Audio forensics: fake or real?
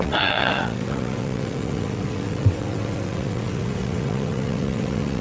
fake